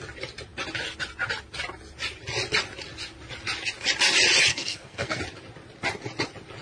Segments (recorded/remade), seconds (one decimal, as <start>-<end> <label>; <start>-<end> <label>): 0.0-4.5 recorded; 4.5-5.2 remade; 5.2-6.6 recorded

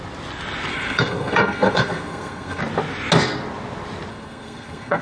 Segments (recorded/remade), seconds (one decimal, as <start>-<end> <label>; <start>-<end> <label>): 0.0-0.7 recorded; 0.7-2.6 remade; 2.6-4.1 recorded; 4.1-5.0 remade

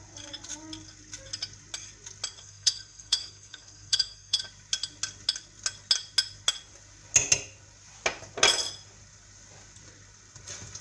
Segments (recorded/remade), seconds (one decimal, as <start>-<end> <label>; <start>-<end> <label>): 0.0-2.4 recorded; 2.4-4.4 remade; 4.4-10.8 recorded

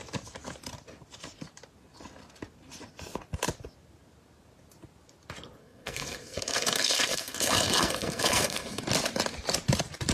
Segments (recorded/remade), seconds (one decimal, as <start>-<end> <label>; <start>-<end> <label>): 0.0-5.6 recorded; 5.6-8.8 remade; 8.8-10.1 recorded

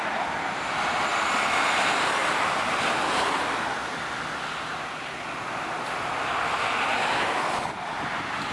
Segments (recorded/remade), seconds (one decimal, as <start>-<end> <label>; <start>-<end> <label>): 0.0-8.5 recorded